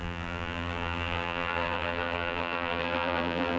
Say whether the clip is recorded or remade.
remade